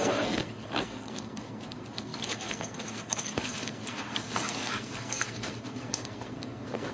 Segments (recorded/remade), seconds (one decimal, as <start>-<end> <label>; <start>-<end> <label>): 0.0-6.9 remade